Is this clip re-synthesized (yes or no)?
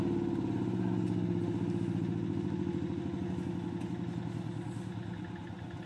no